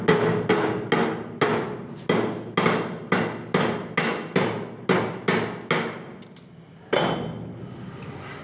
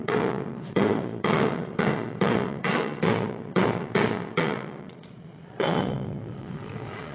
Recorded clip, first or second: first